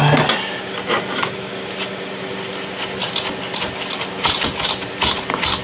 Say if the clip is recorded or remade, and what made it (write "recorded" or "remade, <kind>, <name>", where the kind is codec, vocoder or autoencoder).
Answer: recorded